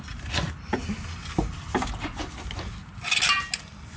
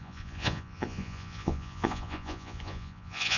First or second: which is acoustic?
first